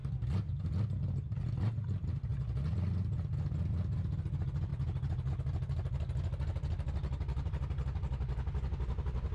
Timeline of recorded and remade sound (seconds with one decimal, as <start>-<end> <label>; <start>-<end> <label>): 0.0-9.3 recorded